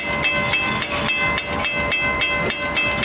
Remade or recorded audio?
recorded